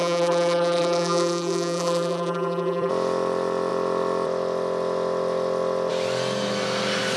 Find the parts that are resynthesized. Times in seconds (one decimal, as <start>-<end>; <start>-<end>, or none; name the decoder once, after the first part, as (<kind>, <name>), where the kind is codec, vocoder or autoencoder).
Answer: 0.0-2.9 (vocoder, BigVGAN v2)